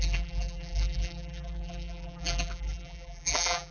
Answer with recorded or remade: remade